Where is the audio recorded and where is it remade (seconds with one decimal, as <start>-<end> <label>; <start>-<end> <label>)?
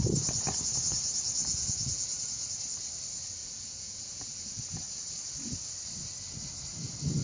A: 0.0-1.4 recorded; 1.4-2.2 remade; 2.2-3.4 recorded; 3.4-4.6 remade; 4.6-7.2 recorded